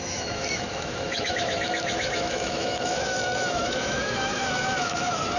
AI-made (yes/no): yes